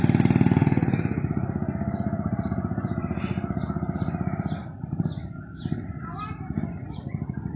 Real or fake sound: real